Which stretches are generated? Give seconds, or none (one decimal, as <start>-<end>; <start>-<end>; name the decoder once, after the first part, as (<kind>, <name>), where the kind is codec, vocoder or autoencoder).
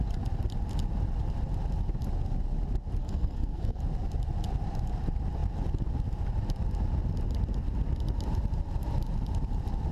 3.0-3.8 (codec, SNAC)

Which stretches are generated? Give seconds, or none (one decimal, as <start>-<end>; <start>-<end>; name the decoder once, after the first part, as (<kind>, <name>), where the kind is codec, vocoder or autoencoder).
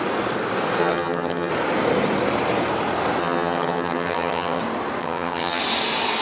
0.8-1.5 (vocoder, HiFi-GAN); 3.2-4.6; 5.0-5.6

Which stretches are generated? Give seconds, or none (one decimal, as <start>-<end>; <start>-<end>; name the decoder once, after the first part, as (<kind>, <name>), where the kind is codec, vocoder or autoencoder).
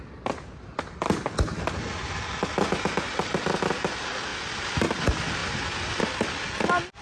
none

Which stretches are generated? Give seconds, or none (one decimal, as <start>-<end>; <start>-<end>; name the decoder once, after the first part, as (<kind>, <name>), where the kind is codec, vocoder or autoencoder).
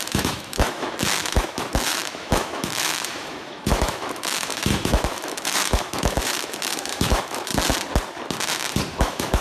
0.0-7.5 (autoencoder, DAC-VAE); 8.9-9.4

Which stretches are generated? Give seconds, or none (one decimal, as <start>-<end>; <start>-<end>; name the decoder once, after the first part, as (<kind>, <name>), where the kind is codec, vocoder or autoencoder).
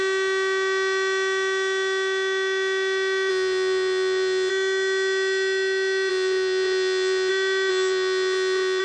3.3-4.5 (vocoder, Vocos); 6.1-7.3; 7.7-8.8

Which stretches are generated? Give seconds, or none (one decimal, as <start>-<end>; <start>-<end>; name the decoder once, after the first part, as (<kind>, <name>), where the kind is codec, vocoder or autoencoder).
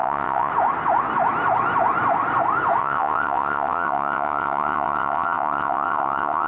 0.0-0.5 (vocoder, WaveNeXt); 2.8-6.5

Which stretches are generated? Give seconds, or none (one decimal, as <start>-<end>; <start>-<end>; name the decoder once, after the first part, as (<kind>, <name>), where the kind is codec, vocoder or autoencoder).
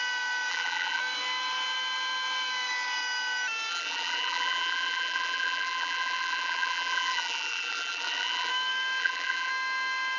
0.5-1.0 (vocoder, BigVGAN v2); 3.7-8.5; 9.0-9.5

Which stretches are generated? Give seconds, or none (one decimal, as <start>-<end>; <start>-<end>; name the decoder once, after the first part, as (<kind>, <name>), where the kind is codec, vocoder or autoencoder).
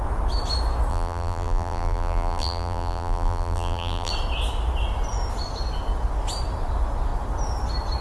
0.9-4.1 (vocoder, BigVGAN v2)